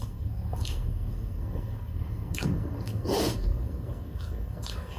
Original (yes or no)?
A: no